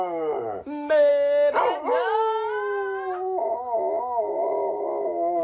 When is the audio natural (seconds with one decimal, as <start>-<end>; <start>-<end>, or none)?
1.1-4.3